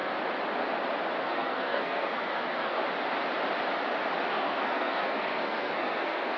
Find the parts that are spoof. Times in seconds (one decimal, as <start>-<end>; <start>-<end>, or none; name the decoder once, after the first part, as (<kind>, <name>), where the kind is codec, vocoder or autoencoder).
1.2-2.8 (codec, SNAC); 4.3-6.4